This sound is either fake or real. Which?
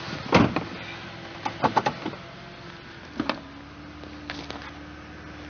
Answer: real